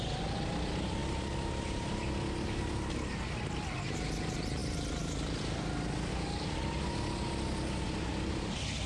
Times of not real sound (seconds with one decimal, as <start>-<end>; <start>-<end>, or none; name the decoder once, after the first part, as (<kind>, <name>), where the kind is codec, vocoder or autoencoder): none